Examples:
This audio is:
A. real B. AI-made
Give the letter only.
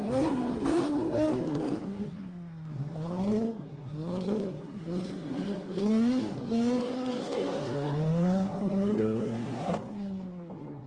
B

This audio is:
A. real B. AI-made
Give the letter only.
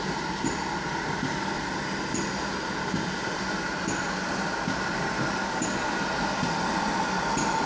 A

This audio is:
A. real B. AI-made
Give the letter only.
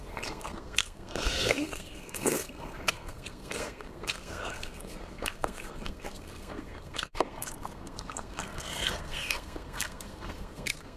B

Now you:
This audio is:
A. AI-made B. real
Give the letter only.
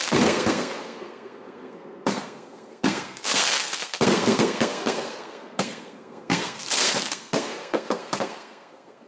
A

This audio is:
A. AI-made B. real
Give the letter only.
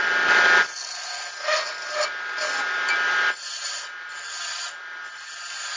B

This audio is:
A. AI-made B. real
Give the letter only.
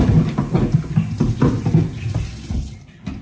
B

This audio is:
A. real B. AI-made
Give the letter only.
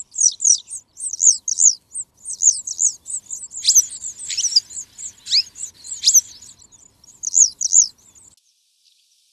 A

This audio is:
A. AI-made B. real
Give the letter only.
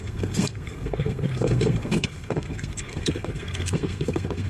A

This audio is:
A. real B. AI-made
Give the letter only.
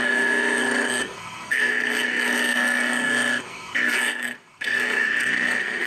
B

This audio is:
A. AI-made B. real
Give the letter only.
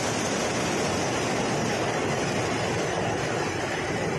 B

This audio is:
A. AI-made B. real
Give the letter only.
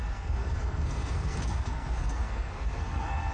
A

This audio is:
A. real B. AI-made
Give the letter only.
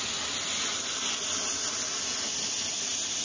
A